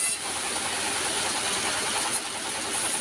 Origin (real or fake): real